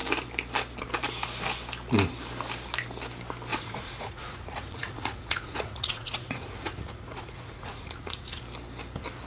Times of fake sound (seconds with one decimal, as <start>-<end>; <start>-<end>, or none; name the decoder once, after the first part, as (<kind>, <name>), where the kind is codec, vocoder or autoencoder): 3.5-8.4 (vocoder, Vocos)